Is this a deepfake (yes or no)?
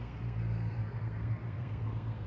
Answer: yes